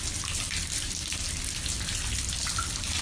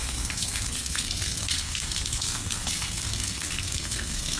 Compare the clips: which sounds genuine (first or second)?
first